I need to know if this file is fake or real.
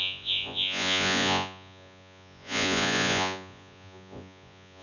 fake